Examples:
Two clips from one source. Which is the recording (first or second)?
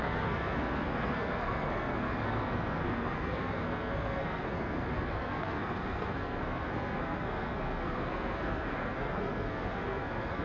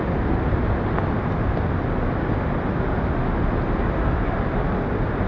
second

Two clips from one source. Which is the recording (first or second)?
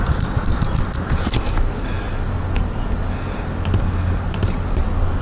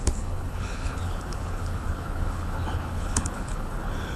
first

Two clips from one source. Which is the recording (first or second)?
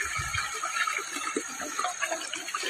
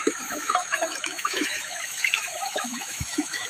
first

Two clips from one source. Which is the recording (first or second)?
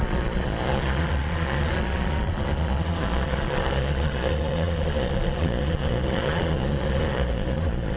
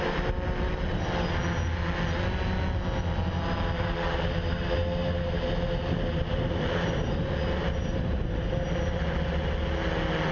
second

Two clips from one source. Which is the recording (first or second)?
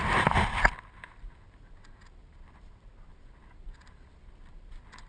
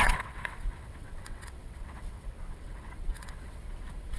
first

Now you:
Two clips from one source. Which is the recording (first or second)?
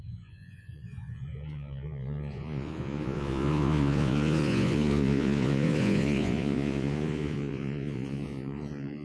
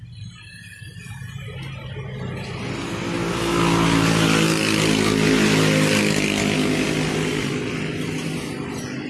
second